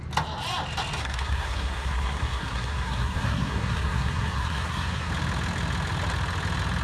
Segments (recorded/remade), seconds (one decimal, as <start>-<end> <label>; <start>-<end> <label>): 0.0-1.0 recorded; 1.0-5.1 remade; 5.1-6.8 recorded